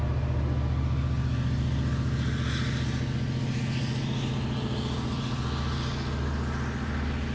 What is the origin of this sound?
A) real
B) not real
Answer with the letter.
A